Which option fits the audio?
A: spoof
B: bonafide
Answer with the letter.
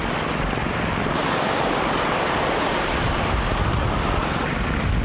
B